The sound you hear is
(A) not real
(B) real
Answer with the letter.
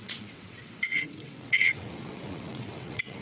A